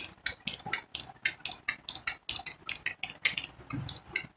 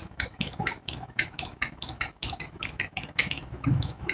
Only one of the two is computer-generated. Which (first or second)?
second